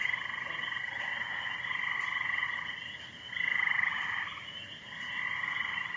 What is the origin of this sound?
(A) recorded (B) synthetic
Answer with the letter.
A